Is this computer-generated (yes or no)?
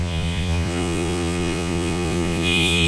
yes